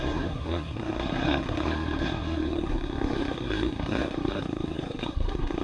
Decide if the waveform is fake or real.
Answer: fake